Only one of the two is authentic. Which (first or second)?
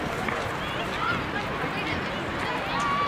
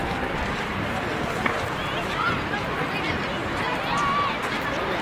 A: first